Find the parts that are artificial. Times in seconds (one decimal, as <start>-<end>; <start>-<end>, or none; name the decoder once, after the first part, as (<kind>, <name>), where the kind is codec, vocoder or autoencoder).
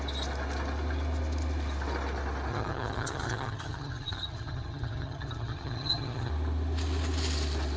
2.5-6.3 (vocoder, HiFi-GAN)